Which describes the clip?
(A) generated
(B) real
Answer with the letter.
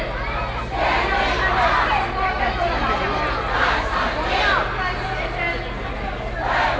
B